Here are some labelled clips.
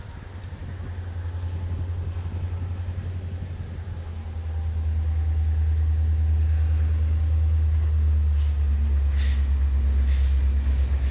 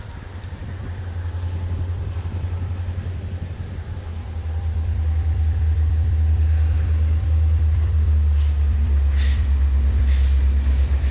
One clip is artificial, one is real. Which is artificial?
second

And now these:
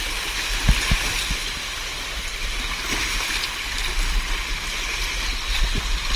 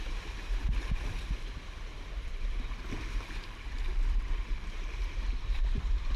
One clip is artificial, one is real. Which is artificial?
second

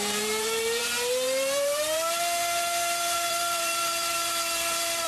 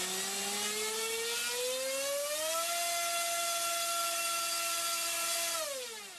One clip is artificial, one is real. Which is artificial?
first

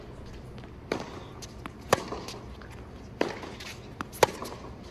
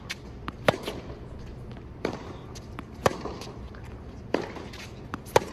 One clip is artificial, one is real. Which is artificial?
second